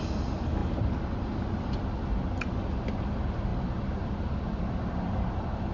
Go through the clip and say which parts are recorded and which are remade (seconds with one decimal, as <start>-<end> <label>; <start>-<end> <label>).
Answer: 0.0-5.7 recorded